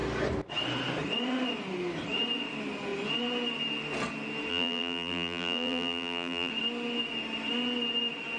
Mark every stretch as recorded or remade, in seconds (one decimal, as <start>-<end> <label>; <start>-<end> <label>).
0.0-4.5 recorded; 4.5-6.5 remade; 6.5-8.4 recorded